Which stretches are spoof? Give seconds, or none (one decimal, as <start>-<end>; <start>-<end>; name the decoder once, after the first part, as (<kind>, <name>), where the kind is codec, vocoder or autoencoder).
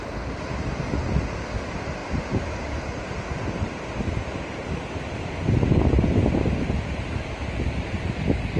none